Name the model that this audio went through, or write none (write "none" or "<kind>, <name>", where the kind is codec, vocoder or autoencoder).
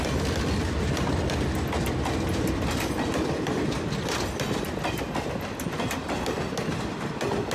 none